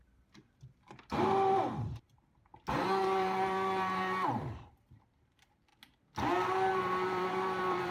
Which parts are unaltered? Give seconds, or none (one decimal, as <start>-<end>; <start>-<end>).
2.5-3.0; 5.7-6.7